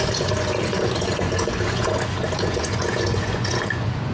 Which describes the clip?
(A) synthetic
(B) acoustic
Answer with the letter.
A